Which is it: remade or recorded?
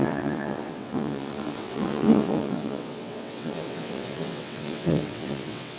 remade